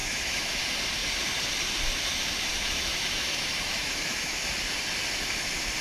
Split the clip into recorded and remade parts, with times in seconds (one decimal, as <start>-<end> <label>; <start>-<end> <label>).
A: 0.0-0.6 remade; 0.6-2.5 recorded; 2.5-4.4 remade; 4.4-5.8 recorded

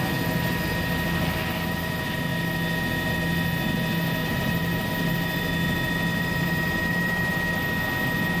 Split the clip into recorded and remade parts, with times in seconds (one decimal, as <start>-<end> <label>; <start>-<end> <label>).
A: 0.0-4.2 recorded; 4.2-4.9 remade; 4.9-6.1 recorded; 6.1-7.5 remade; 7.5-8.4 recorded